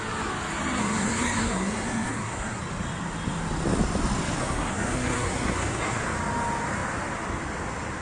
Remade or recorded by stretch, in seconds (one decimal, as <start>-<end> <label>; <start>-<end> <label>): 0.0-0.8 recorded; 0.8-2.6 remade; 2.6-4.4 recorded; 4.4-6.0 remade; 6.0-8.0 recorded